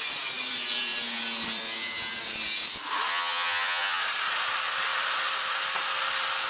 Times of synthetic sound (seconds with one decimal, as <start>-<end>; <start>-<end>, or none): 3.1-4.0